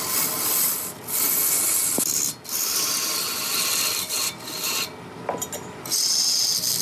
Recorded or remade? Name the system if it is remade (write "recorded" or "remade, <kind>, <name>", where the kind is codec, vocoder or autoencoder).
recorded